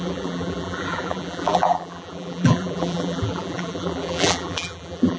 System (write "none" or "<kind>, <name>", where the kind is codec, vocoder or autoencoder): vocoder, BigVGAN v2